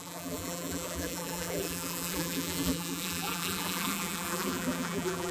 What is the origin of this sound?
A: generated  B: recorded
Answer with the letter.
A